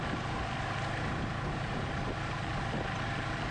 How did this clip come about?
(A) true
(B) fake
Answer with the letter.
A